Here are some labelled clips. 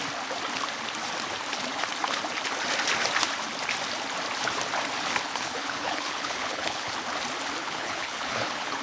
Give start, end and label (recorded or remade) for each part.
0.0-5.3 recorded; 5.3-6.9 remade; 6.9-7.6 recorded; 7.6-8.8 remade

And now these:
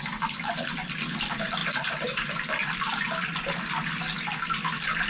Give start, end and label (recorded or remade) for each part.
0.0-5.1 recorded